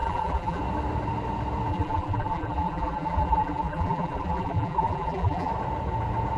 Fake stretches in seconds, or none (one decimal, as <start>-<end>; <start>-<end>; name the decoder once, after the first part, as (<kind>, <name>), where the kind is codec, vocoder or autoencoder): 0.0-0.6 (vocoder, BigVGAN v2); 1.7-5.5